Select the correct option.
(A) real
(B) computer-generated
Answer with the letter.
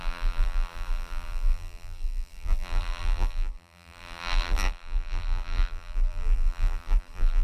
B